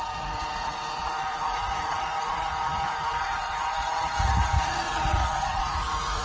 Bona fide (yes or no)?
no